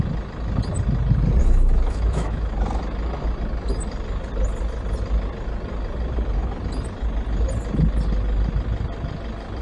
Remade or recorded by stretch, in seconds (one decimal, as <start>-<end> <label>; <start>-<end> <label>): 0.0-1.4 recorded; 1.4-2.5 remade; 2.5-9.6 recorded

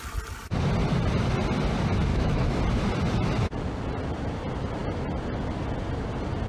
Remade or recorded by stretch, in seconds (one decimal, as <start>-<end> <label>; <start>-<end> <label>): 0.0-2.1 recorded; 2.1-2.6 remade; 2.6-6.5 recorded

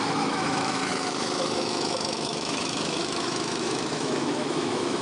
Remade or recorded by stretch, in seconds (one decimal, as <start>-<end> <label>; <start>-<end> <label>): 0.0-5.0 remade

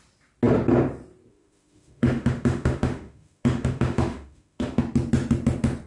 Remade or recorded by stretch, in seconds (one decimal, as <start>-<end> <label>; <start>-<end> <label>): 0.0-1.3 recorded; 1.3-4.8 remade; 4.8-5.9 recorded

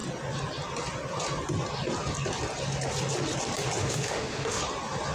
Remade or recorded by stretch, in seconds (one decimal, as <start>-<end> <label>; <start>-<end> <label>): 0.0-3.8 recorded; 3.8-4.6 remade; 4.6-5.1 recorded

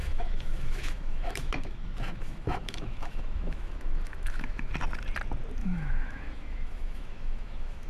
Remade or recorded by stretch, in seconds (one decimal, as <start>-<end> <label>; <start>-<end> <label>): 0.0-4.7 remade; 4.7-5.6 recorded; 5.6-7.9 remade

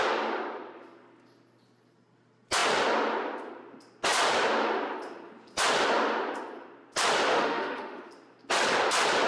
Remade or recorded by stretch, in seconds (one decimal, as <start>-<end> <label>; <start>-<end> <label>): 0.0-7.3 recorded; 7.3-8.1 remade; 8.1-9.3 recorded